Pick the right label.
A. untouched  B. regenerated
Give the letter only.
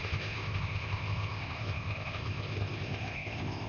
B